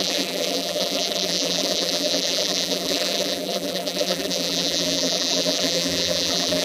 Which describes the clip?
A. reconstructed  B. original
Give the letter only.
A